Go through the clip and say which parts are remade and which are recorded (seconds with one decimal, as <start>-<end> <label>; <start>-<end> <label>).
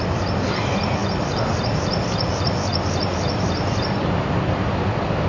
0.0-5.3 recorded